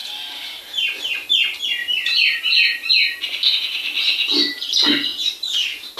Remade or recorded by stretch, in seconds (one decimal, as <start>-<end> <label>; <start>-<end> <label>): 0.0-1.0 remade; 1.0-1.8 recorded; 1.8-2.9 remade; 2.9-6.0 recorded